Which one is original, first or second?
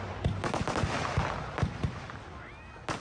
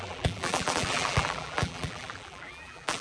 first